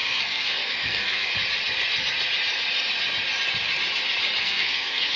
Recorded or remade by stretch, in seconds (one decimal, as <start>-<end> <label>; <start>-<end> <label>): 0.0-1.3 remade; 1.3-4.4 recorded; 4.4-5.2 remade